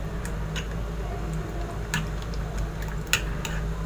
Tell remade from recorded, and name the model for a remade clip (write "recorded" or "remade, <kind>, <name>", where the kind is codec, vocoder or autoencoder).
recorded